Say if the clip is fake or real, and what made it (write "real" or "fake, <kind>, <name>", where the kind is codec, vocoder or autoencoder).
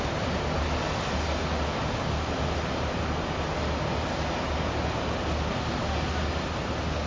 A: real